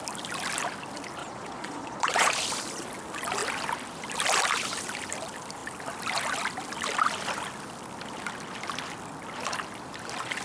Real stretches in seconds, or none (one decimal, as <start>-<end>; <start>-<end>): 0.0-1.2; 2.3-10.4